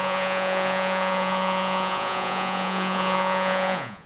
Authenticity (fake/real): fake